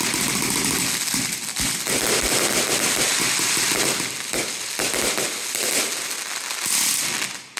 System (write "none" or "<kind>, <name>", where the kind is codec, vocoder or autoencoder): none